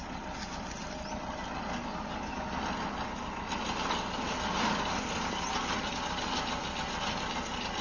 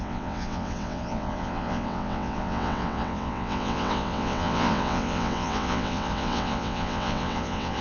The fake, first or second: second